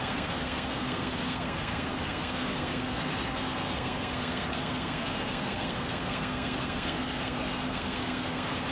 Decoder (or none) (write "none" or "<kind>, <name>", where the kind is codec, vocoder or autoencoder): codec, SNAC